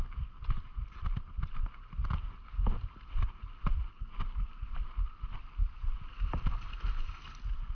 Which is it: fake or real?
real